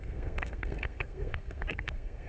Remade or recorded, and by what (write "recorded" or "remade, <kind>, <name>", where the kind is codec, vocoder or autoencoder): remade, codec, SNAC